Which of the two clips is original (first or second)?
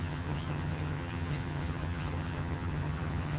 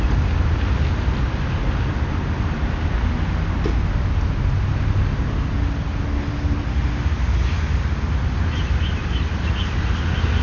second